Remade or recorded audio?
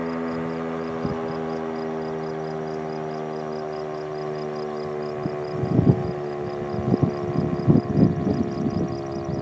recorded